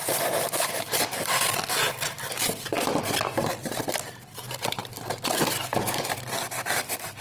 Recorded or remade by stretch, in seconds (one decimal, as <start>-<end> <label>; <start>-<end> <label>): 0.0-7.2 recorded